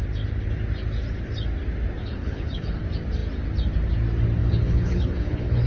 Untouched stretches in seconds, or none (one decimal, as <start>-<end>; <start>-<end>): 0.0-2.0; 2.8-4.4